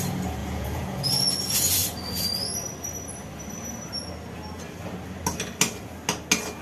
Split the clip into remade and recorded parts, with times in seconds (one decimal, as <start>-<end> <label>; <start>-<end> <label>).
0.0-0.4 recorded; 0.4-1.0 remade; 1.0-6.6 recorded